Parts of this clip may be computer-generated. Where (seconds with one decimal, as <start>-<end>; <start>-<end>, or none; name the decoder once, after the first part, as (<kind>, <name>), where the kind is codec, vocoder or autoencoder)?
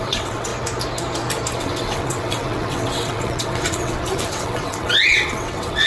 0.0-0.5 (vocoder, WaveNeXt); 1.6-5.9